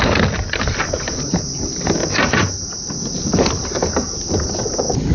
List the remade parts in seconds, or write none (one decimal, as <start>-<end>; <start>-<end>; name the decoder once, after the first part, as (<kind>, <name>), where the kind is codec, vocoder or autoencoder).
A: none